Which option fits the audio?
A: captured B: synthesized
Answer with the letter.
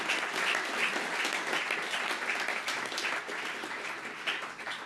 A